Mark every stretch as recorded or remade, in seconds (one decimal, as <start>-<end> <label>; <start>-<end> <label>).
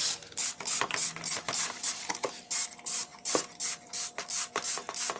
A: 0.0-5.2 recorded